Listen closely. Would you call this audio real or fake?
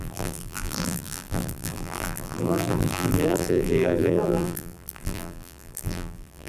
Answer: fake